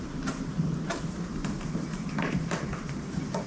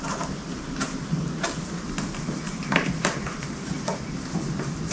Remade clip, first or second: first